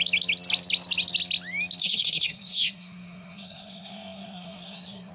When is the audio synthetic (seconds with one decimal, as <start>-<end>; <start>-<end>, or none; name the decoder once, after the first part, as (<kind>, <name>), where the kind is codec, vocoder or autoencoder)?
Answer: 1.8-5.1 (codec, SNAC)

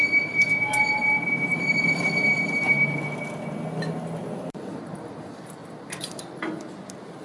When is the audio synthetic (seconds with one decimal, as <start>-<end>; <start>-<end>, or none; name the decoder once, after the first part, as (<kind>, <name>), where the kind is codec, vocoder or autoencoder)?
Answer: 4.2-4.7 (vocoder, BigVGAN v2)

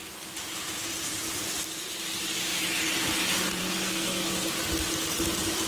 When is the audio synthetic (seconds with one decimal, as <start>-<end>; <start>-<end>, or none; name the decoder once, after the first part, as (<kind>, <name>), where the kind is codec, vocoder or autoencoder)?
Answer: 3.6-4.3 (codec, SNAC)